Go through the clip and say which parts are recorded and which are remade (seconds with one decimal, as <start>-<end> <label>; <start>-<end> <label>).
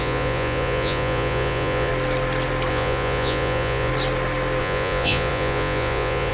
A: 0.0-1.9 remade; 1.9-2.7 recorded; 2.7-3.9 remade; 3.9-4.6 recorded; 4.6-6.3 remade